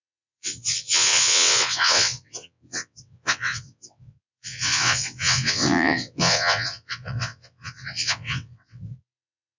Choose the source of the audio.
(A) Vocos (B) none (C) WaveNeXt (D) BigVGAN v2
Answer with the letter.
C